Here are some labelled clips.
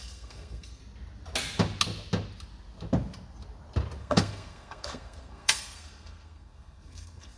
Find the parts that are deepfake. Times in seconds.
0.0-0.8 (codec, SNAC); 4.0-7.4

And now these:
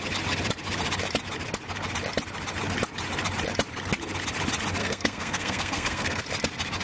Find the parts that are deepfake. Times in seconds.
4.8-6.2 (codec, SNAC)

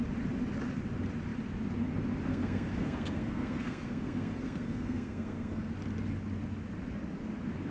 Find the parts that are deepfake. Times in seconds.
2.3-5.7 (codec, SNAC)

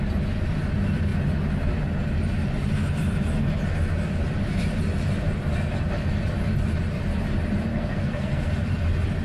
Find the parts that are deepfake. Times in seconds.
7.7-8.5 (codec, SNAC)

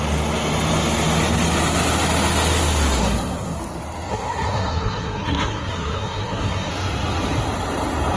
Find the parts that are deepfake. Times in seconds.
3.0-3.6 (codec, SNAC); 4.1-6.7